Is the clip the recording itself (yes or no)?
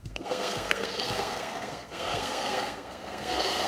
no